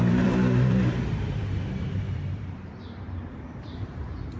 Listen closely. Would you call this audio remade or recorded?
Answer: remade